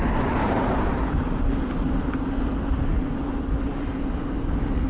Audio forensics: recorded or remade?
recorded